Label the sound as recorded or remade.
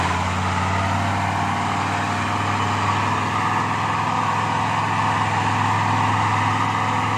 recorded